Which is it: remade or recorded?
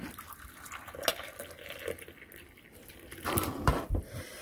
recorded